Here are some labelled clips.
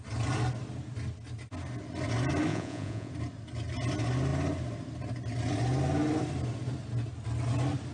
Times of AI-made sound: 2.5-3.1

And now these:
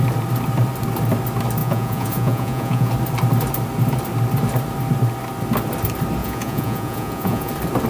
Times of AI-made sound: 1.6-2.9; 6.2-7.5

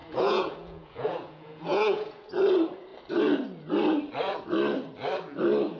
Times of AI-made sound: 0.0-2.3

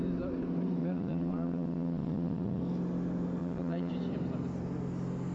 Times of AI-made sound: 0.8-2.6; 3.4-3.9

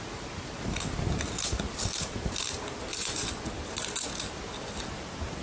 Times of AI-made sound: 2.9-3.5